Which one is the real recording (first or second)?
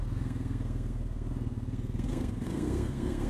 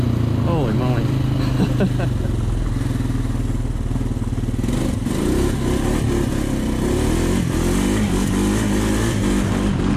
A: second